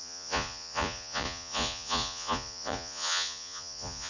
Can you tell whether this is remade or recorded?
remade